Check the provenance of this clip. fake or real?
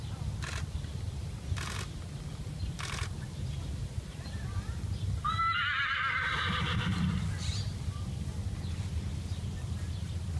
real